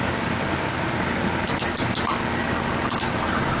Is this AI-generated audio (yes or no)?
no